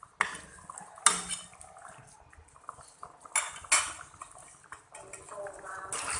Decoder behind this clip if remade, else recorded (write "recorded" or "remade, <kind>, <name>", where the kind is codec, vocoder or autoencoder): recorded